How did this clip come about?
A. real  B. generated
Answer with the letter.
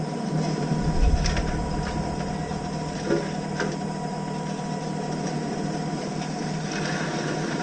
A